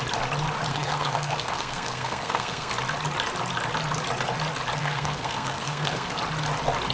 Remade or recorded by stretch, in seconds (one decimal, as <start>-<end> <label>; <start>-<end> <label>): 0.0-0.7 recorded; 0.7-2.7 remade; 2.7-4.8 recorded; 4.8-6.2 remade; 6.2-6.9 recorded